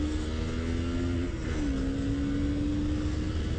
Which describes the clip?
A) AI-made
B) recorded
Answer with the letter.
B